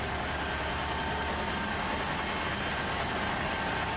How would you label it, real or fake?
real